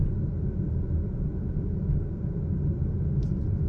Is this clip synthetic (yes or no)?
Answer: no